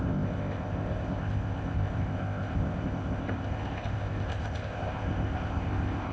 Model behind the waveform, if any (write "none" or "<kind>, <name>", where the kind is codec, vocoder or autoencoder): codec, ZipCodec